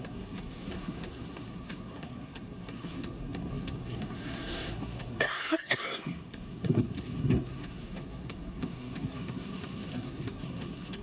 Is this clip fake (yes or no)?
yes